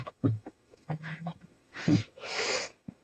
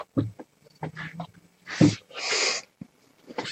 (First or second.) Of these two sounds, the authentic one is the second